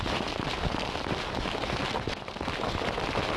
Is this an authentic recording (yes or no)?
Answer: yes